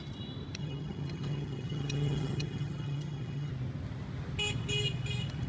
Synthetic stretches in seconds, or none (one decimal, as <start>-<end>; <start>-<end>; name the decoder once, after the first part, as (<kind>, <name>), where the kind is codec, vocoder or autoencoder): 0.6-3.5 (vocoder, HiFi-GAN)